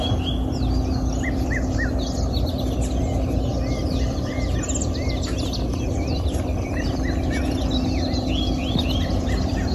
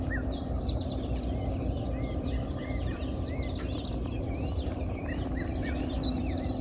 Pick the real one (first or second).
first